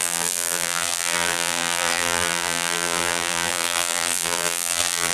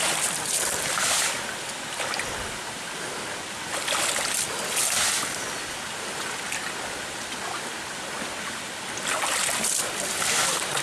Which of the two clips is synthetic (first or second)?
first